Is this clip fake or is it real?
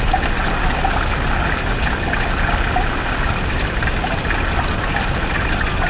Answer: real